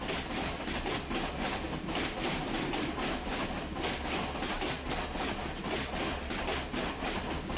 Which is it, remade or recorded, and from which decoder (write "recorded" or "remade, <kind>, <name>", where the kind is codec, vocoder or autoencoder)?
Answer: recorded